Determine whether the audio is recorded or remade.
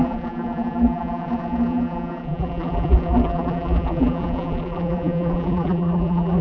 remade